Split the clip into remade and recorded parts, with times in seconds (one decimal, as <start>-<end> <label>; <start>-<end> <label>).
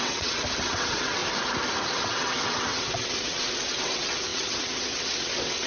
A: 0.0-1.2 remade; 1.2-1.8 recorded; 1.8-5.7 remade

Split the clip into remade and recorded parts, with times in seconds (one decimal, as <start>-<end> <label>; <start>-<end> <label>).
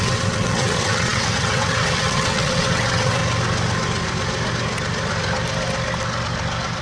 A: 0.0-3.2 remade; 3.2-6.8 recorded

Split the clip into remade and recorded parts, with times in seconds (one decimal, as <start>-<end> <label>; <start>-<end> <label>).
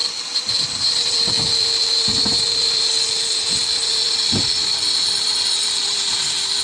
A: 0.0-6.6 recorded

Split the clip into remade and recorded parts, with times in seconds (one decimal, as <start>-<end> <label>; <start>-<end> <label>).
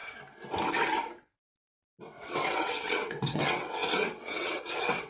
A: 0.0-2.0 recorded; 2.0-5.1 remade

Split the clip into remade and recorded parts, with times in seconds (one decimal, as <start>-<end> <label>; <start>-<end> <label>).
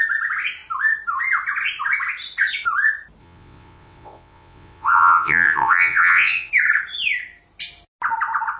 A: 0.0-3.2 recorded; 3.2-6.5 remade; 6.5-8.6 recorded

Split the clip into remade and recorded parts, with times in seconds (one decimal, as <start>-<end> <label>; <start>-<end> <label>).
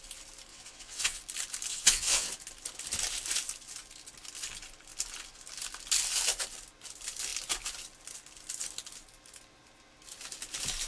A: 0.0-0.5 recorded; 0.5-1.2 remade; 1.2-1.7 recorded; 1.7-2.3 remade; 2.3-10.9 recorded